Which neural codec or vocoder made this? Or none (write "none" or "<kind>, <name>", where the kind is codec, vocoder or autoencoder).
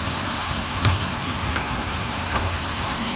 codec, SNAC